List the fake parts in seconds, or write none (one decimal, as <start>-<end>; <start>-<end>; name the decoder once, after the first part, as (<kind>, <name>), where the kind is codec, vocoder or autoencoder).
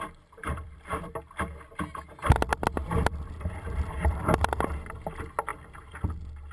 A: 0.4-1.1 (vocoder, BigVGAN v2); 2.8-4.2; 5.5-6.0